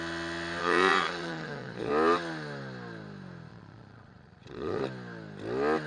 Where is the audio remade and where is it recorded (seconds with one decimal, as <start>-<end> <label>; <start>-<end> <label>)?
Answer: 0.0-0.6 recorded; 0.6-1.9 remade; 1.9-3.5 recorded; 3.5-4.8 remade; 4.8-5.9 recorded